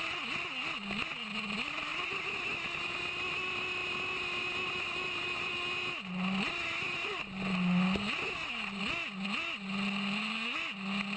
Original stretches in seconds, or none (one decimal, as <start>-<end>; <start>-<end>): 0.0-11.2